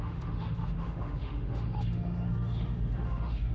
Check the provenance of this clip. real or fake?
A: fake